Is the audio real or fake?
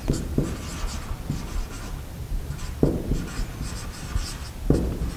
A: real